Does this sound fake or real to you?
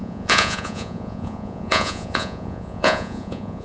fake